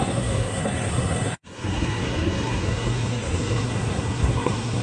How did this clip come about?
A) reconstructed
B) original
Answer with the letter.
A